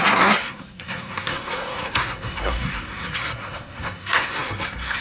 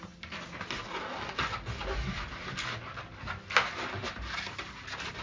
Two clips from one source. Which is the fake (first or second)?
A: first